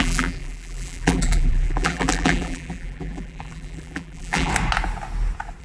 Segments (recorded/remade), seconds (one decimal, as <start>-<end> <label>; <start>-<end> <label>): 0.0-4.5 remade; 4.5-5.6 recorded